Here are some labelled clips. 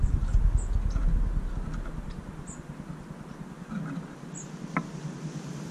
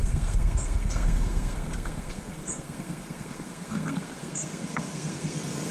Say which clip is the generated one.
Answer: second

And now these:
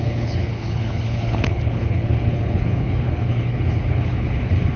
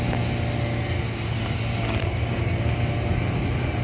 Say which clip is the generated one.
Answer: first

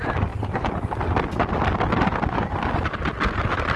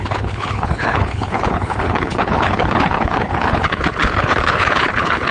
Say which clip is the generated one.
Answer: second